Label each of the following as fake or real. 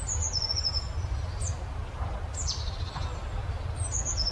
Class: real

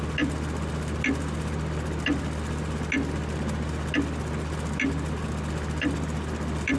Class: real